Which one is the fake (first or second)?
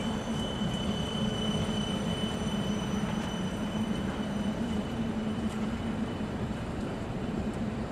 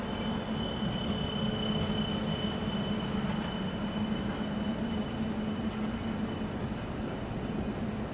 first